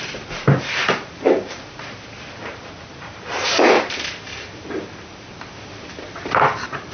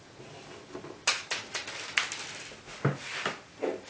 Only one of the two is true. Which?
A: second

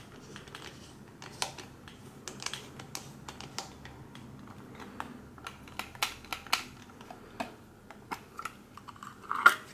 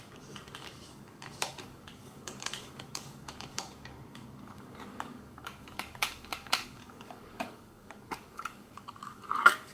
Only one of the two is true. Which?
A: first